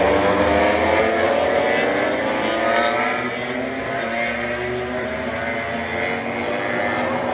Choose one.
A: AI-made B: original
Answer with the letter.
B